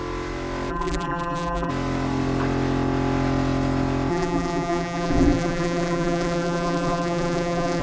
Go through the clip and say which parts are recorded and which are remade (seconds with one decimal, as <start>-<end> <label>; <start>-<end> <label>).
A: 0.0-0.7 recorded; 0.7-1.7 remade; 1.7-4.1 recorded; 4.1-7.8 remade